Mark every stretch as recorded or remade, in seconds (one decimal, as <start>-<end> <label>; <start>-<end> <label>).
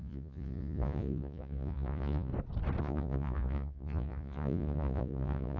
0.0-2.3 remade; 2.3-2.8 recorded; 2.8-5.6 remade